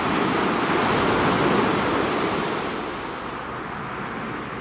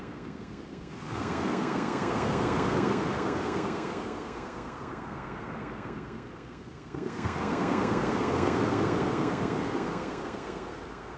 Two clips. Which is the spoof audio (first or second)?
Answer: second